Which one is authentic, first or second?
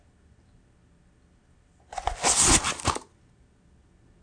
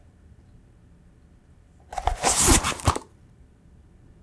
first